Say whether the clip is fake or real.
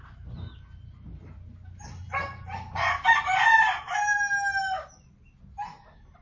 real